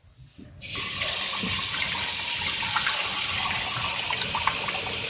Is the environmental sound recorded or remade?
recorded